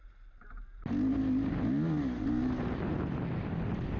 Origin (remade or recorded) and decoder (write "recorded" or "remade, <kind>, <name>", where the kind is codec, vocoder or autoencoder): recorded